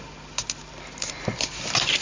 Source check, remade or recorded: recorded